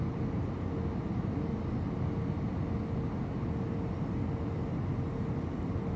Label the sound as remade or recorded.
recorded